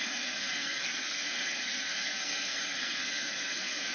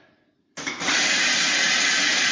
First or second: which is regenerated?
first